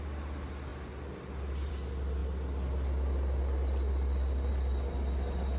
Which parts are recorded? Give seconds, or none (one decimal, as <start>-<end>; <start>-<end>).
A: 0.0-5.6

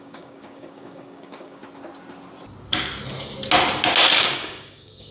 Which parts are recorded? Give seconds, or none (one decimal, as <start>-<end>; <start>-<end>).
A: 1.6-4.2

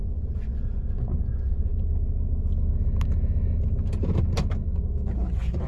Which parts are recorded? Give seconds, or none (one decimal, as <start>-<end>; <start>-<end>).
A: 1.7-5.1

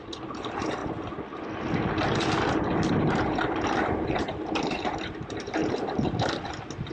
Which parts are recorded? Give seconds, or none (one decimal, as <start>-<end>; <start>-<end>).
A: 0.8-3.0

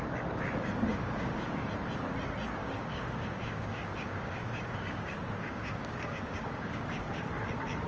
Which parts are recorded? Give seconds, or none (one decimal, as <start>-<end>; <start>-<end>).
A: 0.0-0.9; 1.5-2.6; 7.3-7.9

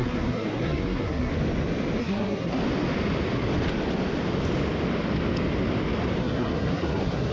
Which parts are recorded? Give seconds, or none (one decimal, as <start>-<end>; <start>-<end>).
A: 1.3-2.0; 2.6-6.2

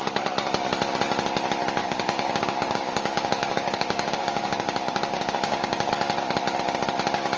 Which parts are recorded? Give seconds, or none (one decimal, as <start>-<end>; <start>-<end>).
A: 0.0-1.8; 5.9-7.4

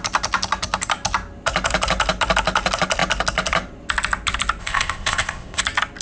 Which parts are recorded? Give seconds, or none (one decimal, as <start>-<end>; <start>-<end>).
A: 0.0-4.6; 5.6-6.0